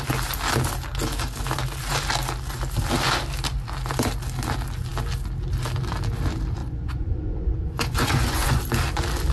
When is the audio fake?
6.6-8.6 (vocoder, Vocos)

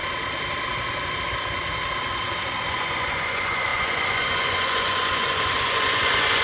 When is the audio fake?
2.7-6.4 (vocoder, Vocos)

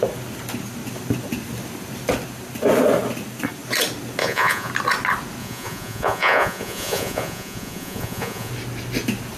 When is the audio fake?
4.2-4.7 (vocoder, Vocos); 5.4-8.5

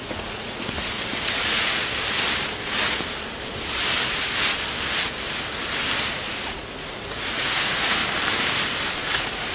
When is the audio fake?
0.0-1.8 (vocoder, Vocos); 6.5-8.0; 9.0-9.5

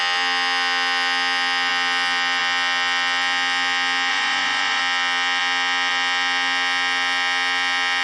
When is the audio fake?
4.1-4.8 (vocoder, Vocos)

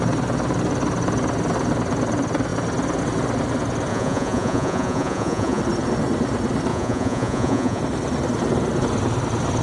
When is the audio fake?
3.9-5.6 (vocoder, Vocos); 6.7-7.8